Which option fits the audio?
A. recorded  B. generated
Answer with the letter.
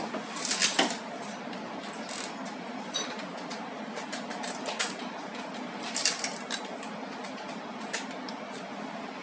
A